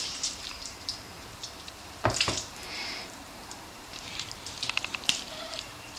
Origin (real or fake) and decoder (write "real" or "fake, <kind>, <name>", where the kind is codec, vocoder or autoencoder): fake, vocoder, BigVGAN v2